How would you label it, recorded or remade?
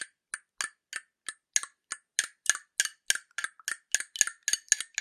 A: recorded